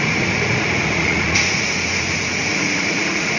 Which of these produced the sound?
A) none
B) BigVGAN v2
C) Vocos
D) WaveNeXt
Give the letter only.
C